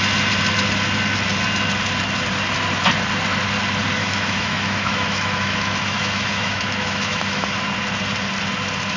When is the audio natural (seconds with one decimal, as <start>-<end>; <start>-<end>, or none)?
0.0-4.0; 7.6-9.0